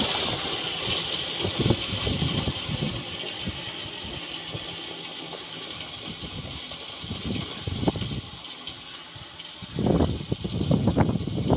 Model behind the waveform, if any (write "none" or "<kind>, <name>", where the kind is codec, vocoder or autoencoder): none